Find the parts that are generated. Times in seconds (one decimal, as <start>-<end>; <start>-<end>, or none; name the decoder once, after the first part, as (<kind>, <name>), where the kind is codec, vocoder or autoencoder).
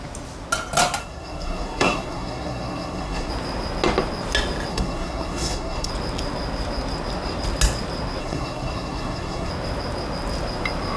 1.0-3.3 (codec, SNAC); 4.7-5.9; 8.2-9.5